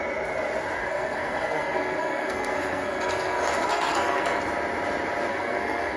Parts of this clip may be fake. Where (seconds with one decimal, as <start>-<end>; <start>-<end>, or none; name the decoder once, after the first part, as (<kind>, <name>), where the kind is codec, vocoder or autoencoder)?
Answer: 0.8-4.4 (codec, SNAC); 5.3-6.0